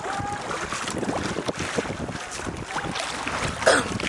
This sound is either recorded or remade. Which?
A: recorded